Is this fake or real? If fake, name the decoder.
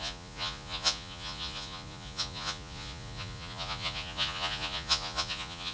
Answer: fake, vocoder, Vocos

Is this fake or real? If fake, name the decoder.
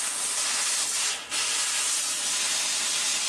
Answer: real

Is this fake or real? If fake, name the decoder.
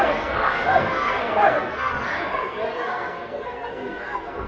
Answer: fake, codec, SNAC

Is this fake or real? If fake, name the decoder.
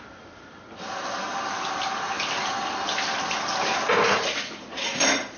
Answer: real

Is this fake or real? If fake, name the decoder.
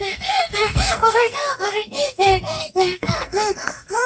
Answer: fake, codec, SNAC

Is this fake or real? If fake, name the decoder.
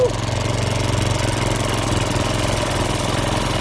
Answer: real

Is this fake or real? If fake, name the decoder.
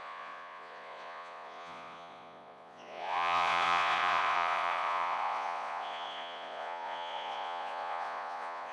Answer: fake, vocoder, Vocos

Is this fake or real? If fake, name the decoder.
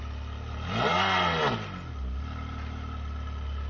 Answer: real